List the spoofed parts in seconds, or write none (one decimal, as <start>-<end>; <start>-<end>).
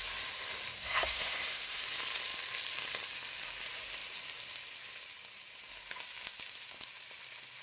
0.8-1.8